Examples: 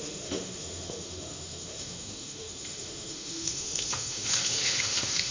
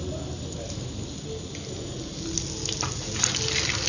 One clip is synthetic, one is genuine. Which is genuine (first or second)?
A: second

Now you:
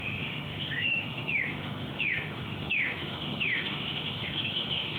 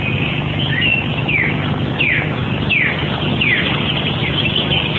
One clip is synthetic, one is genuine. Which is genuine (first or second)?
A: second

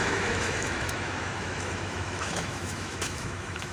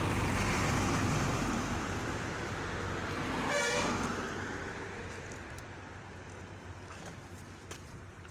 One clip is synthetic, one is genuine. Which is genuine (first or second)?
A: second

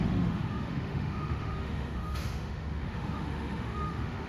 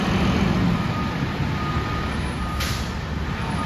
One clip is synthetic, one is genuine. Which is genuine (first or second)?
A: second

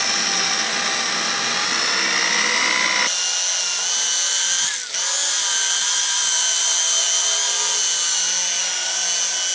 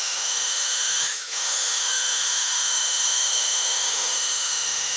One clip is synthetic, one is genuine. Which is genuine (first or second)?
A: first